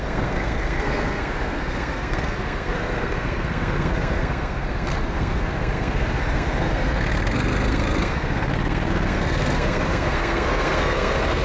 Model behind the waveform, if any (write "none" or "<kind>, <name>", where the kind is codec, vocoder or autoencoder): codec, SNAC